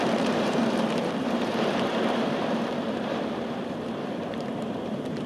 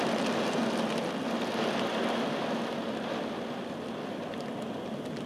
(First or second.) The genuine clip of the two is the second